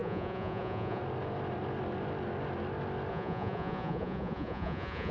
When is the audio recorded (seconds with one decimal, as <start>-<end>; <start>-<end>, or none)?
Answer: 1.0-3.1